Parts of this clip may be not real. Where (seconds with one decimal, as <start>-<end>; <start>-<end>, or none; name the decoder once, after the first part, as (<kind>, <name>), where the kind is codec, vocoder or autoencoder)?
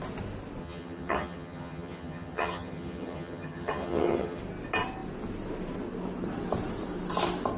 0.6-4.4 (vocoder, HiFi-GAN)